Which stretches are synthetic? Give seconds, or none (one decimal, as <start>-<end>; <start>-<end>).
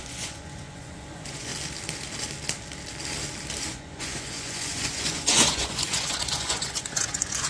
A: 0.0-1.5; 3.6-7.5